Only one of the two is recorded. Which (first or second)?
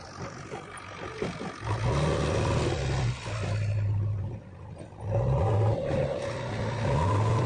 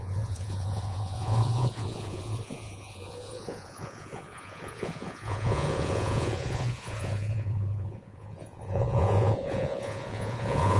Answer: first